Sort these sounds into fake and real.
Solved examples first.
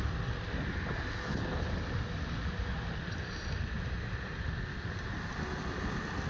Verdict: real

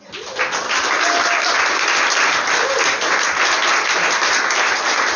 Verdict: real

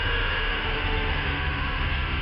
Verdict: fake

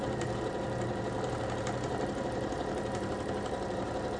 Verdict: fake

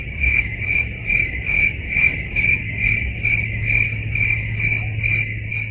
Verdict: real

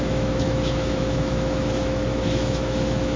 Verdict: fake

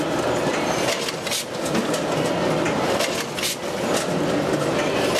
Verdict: real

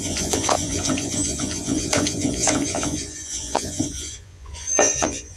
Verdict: fake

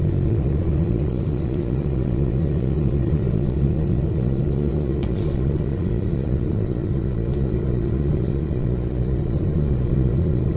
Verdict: fake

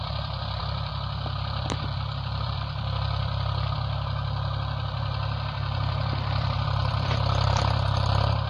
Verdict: fake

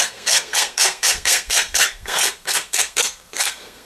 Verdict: fake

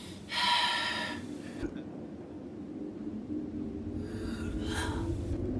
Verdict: real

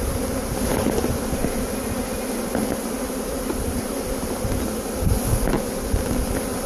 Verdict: real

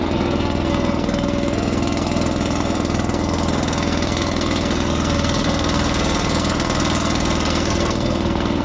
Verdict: fake